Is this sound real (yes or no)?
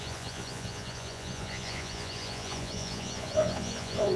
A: no